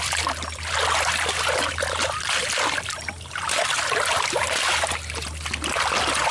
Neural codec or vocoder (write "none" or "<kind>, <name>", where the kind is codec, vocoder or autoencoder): none